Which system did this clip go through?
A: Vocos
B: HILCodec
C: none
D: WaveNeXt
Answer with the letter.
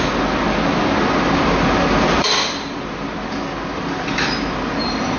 C